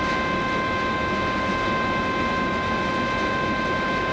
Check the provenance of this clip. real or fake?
real